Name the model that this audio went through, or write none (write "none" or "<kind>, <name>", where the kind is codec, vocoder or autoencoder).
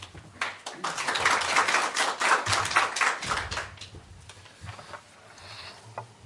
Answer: none